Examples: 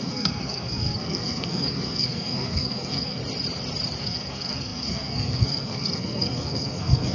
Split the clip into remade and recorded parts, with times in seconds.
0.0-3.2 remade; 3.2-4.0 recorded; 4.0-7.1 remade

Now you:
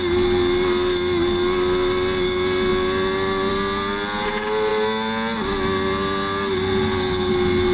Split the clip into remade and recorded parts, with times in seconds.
0.0-7.7 recorded

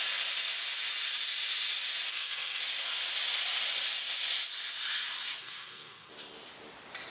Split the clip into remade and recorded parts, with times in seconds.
0.0-2.1 recorded; 2.1-2.6 remade; 2.6-5.4 recorded; 5.4-6.1 remade; 6.1-7.1 recorded

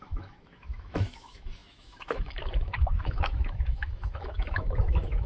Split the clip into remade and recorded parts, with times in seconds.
0.0-5.3 remade

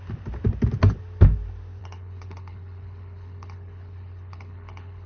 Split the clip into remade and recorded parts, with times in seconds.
0.0-1.8 recorded; 1.8-5.1 remade

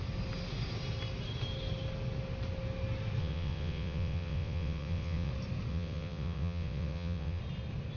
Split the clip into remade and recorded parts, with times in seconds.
0.0-3.2 recorded; 3.2-5.3 remade; 5.3-5.7 recorded; 5.7-7.4 remade; 7.4-8.0 recorded

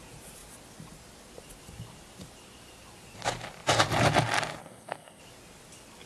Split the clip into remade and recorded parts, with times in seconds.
0.0-4.6 recorded; 4.6-5.2 remade; 5.2-6.1 recorded